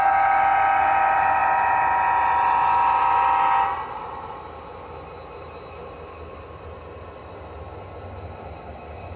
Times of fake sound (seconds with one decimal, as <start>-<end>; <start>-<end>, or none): none